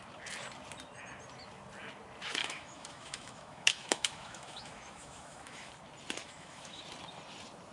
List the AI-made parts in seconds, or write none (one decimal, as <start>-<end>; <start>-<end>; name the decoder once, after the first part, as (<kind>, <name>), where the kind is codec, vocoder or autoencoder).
2.4-5.7 (autoencoder, DAC-VAE); 6.2-6.8